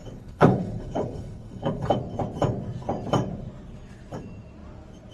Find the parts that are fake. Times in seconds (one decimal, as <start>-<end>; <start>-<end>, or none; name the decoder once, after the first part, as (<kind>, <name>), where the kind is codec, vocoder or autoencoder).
0.0-2.0 (codec, HILCodec)